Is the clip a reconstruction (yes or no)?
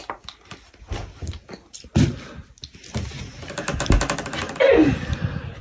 no